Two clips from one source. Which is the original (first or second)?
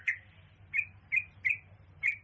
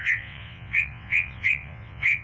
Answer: first